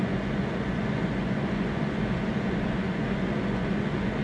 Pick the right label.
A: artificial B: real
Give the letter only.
A